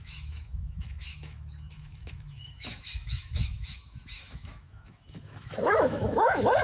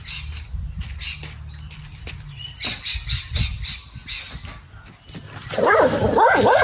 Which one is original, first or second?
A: second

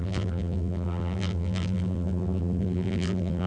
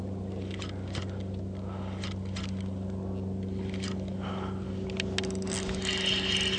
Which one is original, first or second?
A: second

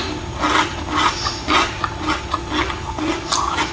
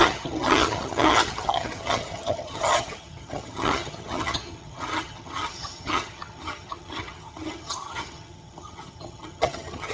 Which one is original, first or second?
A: first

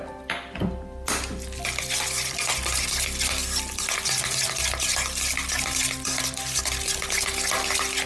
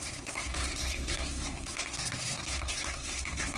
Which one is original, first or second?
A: first